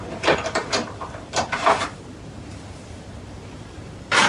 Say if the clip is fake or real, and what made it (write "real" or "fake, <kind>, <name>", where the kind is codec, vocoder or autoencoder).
fake, vocoder, BigVGAN v2